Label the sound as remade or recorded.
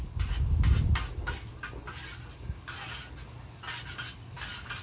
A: recorded